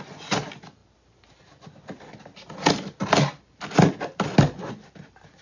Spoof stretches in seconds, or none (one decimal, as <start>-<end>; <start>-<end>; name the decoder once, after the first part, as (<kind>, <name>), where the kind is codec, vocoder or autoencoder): none